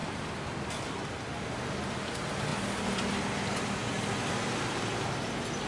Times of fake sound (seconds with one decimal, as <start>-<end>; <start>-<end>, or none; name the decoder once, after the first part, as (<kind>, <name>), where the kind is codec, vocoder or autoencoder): none